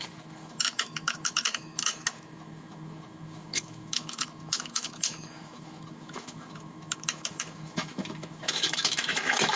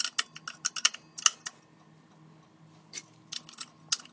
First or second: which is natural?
second